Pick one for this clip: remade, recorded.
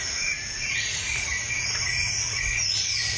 remade